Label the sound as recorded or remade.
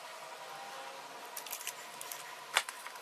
recorded